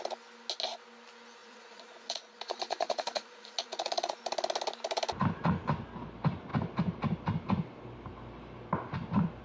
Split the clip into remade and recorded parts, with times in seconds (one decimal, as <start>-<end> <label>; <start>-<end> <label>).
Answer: 0.0-1.4 recorded; 1.4-4.2 remade; 4.2-9.4 recorded